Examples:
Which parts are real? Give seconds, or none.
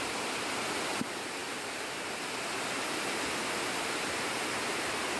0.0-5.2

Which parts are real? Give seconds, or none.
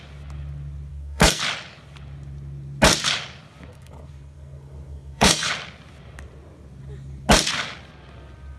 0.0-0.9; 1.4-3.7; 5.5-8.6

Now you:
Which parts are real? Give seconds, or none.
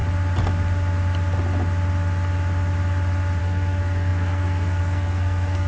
0.0-3.4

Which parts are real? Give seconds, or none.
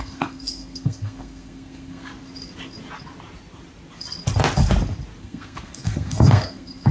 2.1-5.2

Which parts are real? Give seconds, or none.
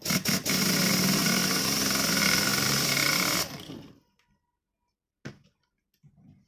0.0-6.5